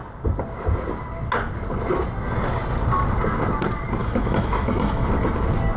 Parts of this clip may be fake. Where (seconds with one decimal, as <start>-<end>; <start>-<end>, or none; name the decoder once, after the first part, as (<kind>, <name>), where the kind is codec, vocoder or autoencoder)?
4.0-5.1 (autoencoder, DAC-VAE)